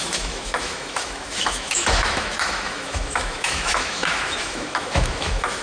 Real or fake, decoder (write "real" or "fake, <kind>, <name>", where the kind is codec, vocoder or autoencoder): fake, autoencoder, DAC-VAE